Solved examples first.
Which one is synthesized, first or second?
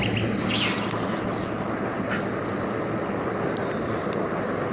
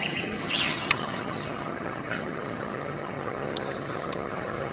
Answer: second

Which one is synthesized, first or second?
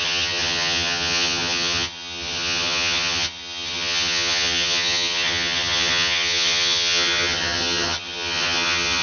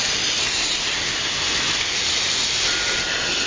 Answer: first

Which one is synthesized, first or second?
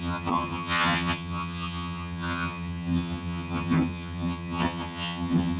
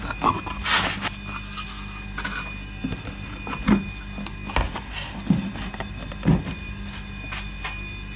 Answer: first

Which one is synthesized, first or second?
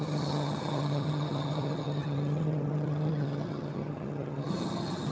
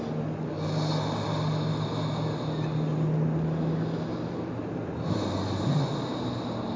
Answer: first